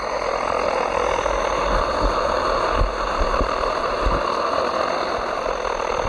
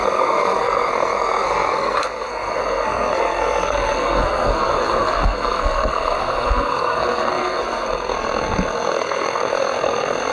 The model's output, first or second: second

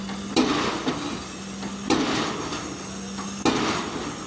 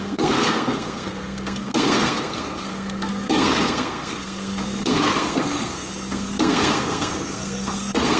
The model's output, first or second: second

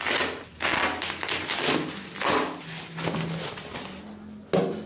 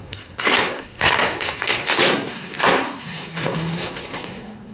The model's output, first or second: second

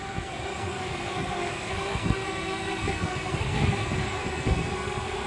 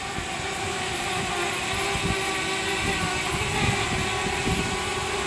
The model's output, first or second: first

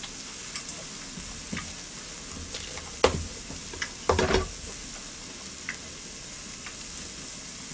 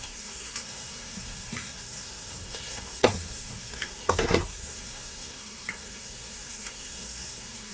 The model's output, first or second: second